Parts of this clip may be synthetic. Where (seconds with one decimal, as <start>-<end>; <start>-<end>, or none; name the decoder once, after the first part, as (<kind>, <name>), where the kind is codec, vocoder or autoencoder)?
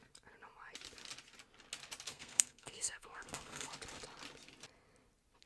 2.1-3.7 (codec, SNAC)